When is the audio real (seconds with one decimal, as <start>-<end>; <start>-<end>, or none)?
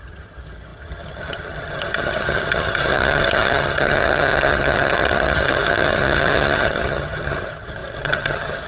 none